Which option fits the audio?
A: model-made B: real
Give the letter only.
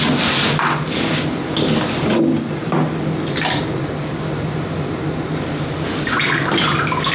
B